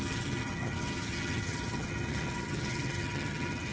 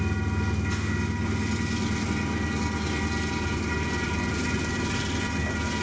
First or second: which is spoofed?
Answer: first